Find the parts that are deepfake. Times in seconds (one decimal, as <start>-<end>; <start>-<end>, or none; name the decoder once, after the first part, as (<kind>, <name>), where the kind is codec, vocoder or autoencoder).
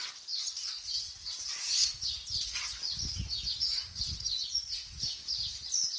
1.8-2.8 (vocoder, Vocos); 3.7-5.0